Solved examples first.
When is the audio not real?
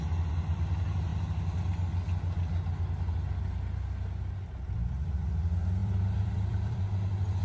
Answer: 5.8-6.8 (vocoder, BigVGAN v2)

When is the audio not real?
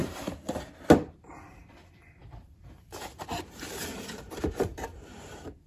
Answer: 0.0-0.8 (vocoder, BigVGAN v2); 2.2-5.7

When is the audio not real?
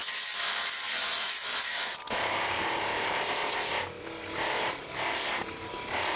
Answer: 0.5-3.4 (vocoder, BigVGAN v2); 4.6-6.2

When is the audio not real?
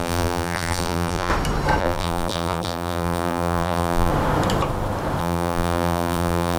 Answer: 0.0-1.3 (vocoder, BigVGAN v2); 1.8-4.1; 5.2-6.6